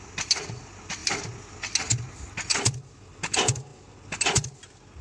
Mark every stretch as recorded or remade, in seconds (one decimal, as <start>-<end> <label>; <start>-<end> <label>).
0.0-5.0 recorded